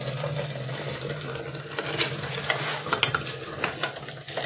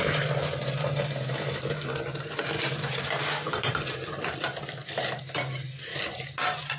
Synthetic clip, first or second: second